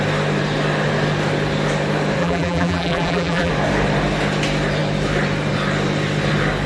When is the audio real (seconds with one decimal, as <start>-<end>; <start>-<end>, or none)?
0.0-2.2; 3.5-6.7